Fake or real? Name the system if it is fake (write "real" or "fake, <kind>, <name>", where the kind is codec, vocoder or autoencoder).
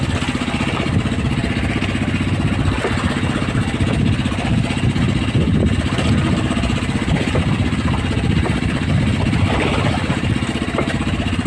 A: real